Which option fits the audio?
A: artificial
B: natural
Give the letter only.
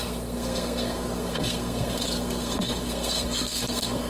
A